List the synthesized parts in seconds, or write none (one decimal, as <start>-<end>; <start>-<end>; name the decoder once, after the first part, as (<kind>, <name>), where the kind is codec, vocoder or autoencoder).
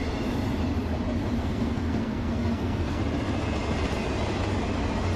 1.4-3.0 (codec, SNAC)